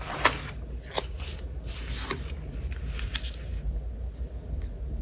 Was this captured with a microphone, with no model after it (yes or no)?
yes